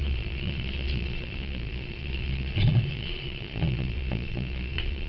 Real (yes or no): no